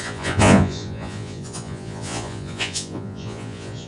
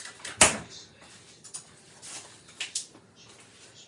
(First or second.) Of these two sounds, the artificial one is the first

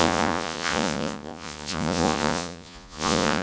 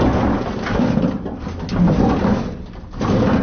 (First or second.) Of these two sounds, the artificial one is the first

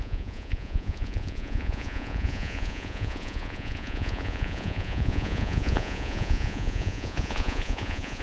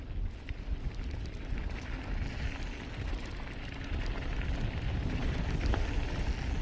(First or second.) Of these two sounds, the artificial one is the first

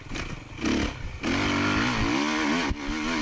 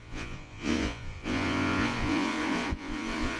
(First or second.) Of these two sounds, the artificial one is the second